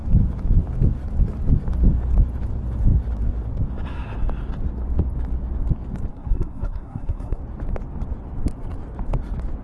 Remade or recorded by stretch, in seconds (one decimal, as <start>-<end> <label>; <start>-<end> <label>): 0.0-6.1 recorded; 6.1-7.4 remade; 7.4-9.6 recorded